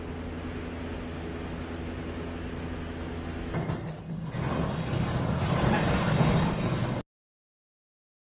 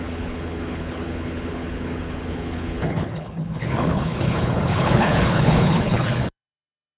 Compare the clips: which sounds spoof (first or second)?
second